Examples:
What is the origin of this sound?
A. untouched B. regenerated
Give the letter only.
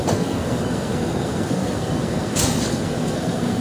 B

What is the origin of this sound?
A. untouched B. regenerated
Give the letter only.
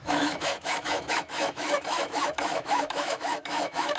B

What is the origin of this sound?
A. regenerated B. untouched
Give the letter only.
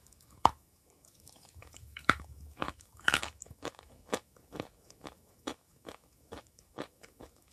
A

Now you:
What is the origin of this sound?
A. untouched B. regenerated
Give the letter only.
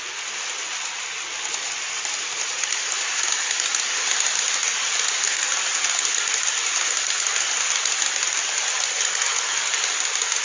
A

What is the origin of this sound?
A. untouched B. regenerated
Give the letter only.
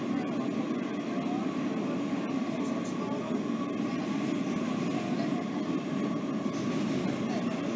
A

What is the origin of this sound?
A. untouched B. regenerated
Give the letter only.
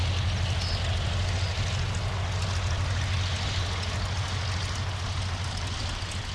A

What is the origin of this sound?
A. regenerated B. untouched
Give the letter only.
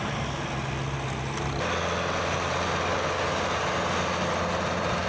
B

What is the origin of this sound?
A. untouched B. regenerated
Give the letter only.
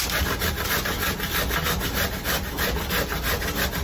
A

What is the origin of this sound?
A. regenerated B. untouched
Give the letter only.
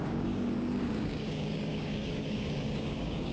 A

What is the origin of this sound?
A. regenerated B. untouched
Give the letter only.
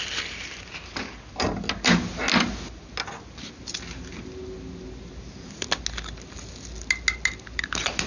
B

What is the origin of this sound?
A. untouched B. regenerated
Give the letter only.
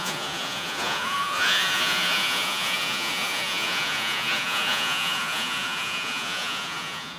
B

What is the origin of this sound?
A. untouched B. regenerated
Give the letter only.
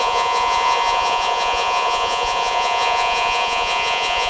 B